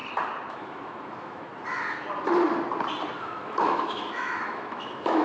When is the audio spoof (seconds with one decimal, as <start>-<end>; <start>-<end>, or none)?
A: 0.5-1.5; 3.2-5.2